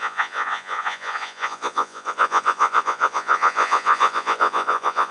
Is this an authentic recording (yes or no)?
no